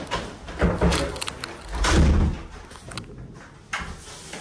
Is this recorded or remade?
recorded